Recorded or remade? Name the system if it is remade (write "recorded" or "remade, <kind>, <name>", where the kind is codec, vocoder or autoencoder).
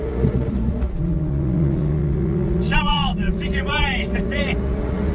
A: remade, vocoder, Vocos